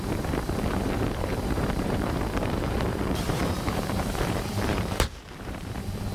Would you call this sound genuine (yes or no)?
no